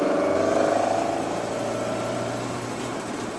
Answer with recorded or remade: recorded